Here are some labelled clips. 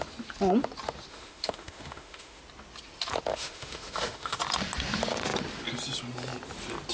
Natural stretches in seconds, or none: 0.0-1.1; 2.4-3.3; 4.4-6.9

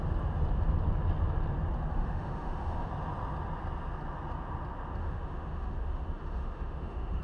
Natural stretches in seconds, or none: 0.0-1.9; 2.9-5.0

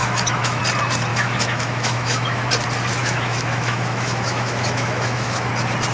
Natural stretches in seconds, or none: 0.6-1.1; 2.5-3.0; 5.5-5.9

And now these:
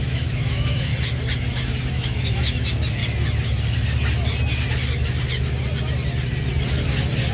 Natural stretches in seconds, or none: 0.9-1.9; 3.0-7.3